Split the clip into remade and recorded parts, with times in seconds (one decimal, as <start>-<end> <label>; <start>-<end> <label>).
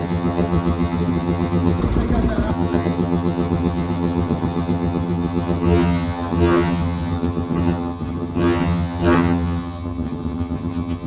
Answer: 0.0-1.8 remade; 1.8-2.5 recorded; 2.5-11.1 remade